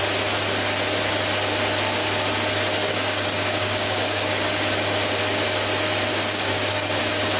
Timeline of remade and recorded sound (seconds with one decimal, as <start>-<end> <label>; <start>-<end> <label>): 0.0-2.8 recorded; 2.8-4.3 remade; 4.3-6.1 recorded; 6.1-7.0 remade; 7.0-7.4 recorded